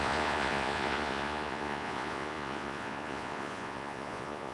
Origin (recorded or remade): remade